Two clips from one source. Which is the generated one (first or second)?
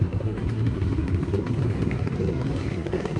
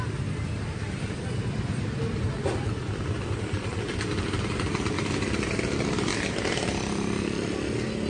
first